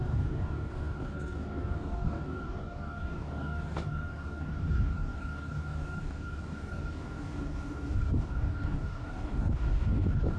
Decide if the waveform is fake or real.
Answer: fake